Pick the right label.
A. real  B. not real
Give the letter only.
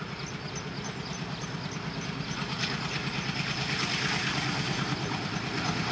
A